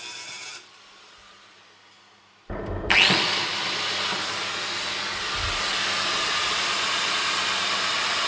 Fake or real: real